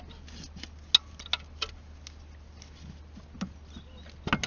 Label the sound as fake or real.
real